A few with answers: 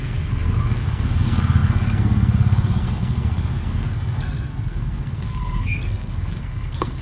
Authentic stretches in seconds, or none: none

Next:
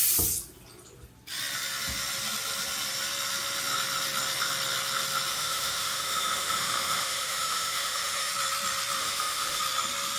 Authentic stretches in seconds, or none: 0.0-5.3; 8.3-9.0; 9.6-10.2

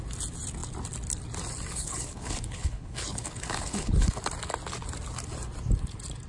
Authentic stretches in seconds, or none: 0.0-1.7; 4.2-6.3

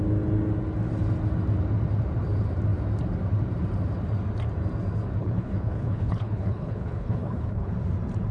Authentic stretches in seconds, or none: 0.0-5.2; 7.7-8.3

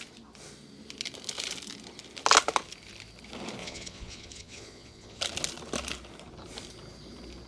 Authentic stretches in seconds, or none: 0.0-3.6; 5.2-7.5

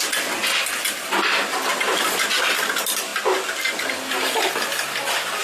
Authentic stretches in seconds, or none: 0.0-1.7; 2.4-5.4

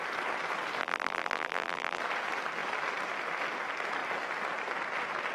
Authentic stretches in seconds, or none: 0.0-0.8; 2.0-5.3